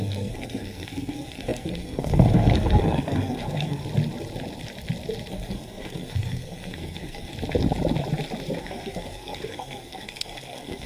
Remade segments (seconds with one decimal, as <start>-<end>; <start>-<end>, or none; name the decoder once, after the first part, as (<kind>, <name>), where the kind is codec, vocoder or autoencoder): 0.0-3.8 (codec, SNAC); 5.3-7.3; 8.6-10.9